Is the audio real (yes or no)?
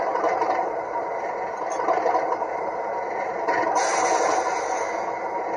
yes